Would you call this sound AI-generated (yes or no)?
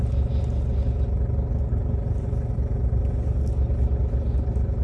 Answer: no